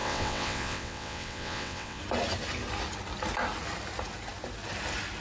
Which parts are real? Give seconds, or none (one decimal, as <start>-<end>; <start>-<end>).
2.0-5.2